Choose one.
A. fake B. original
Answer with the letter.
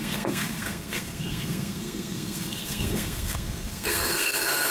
A